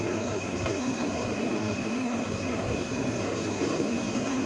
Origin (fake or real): fake